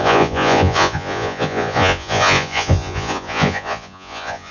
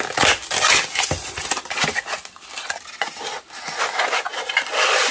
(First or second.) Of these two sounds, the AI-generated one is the first